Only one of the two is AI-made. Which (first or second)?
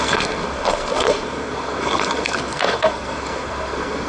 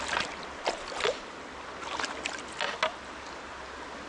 first